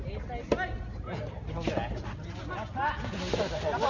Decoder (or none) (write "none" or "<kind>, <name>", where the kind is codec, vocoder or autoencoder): none